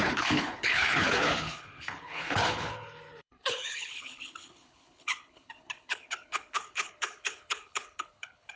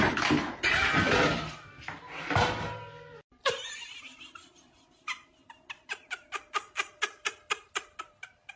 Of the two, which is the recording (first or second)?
second